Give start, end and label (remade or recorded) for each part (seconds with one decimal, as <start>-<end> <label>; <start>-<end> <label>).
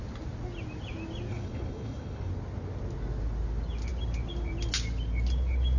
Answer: 0.0-1.3 recorded; 1.3-2.3 remade; 2.3-5.8 recorded